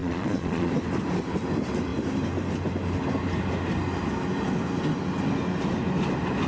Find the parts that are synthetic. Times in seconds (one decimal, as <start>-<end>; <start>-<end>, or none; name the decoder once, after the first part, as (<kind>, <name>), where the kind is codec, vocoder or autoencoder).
0.0-0.7 (vocoder, Vocos)